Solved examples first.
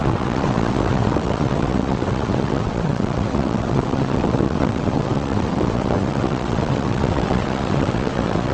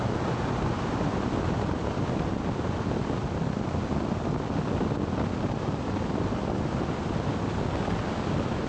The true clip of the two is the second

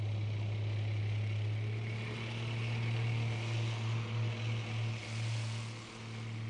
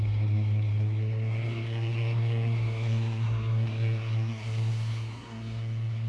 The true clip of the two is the first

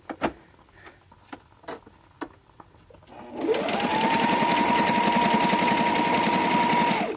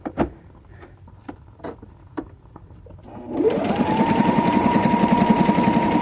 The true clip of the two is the first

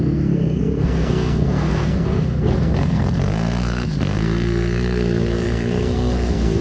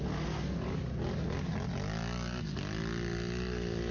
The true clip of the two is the second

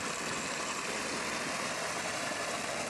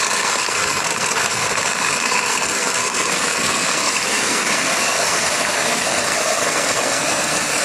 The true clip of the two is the first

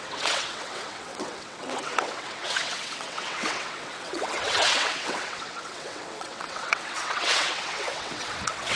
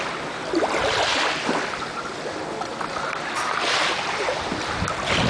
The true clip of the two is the second